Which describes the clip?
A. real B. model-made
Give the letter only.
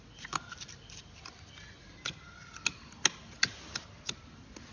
A